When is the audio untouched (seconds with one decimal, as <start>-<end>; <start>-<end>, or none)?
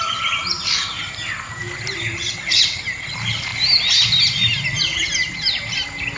0.0-6.2